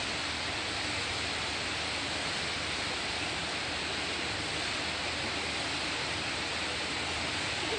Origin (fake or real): real